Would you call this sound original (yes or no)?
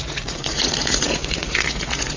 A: no